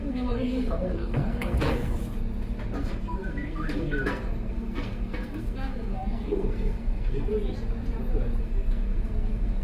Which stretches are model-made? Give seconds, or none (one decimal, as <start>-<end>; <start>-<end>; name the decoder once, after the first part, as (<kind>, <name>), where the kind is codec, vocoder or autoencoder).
0.0-2.0 (codec, SNAC); 2.8-7.3; 8.4-9.6